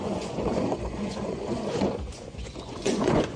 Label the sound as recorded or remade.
remade